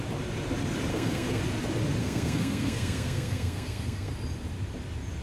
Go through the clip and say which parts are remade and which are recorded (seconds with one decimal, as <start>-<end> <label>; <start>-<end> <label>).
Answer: 0.0-0.9 recorded; 0.9-1.4 remade; 1.4-2.0 recorded; 2.0-4.1 remade; 4.1-5.2 recorded

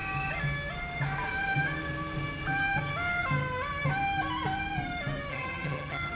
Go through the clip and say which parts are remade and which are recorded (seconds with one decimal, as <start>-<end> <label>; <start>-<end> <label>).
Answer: 0.0-5.3 recorded; 5.3-6.1 remade

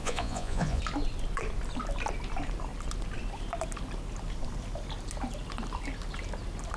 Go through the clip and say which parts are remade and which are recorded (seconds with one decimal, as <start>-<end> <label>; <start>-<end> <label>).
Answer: 0.0-0.8 remade; 0.8-6.8 recorded

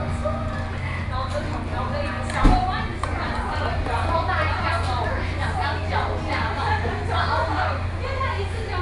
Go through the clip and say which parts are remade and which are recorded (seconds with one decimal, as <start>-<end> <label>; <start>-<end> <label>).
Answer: 0.0-8.8 recorded